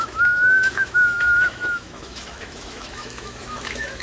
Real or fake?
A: fake